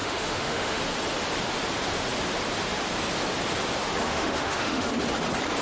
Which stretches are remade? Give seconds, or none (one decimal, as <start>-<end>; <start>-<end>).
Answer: 0.0-0.8; 4.0-4.9